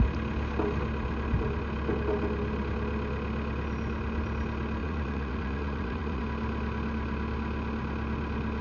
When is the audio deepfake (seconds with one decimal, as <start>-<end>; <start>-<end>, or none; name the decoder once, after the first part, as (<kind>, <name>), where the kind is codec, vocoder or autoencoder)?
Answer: 4.8-6.2 (vocoder, Vocos)